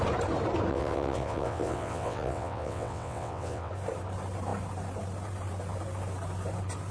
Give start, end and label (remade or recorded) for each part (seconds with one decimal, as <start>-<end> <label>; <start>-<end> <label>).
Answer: 0.0-0.7 recorded; 0.7-3.7 remade; 3.7-6.9 recorded